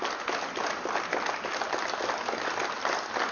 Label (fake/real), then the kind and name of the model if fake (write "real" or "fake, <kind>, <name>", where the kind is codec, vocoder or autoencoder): real